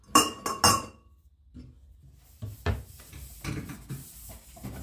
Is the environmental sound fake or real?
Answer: real